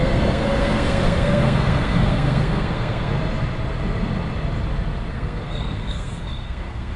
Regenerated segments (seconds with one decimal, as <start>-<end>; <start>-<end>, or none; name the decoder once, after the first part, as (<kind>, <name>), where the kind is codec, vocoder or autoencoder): 0.0-3.1 (codec, SNAC); 5.1-7.0